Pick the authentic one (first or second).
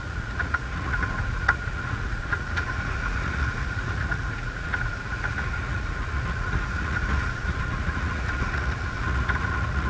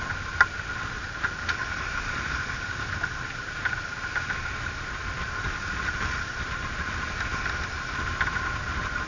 second